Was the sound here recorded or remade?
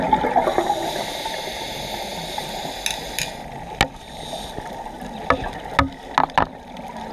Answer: recorded